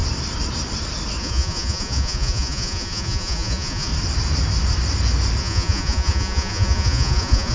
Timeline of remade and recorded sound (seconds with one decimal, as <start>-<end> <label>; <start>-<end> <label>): 0.0-1.2 recorded; 1.2-3.9 remade; 3.9-5.4 recorded; 5.4-7.5 remade